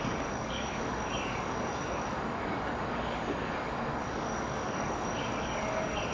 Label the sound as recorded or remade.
remade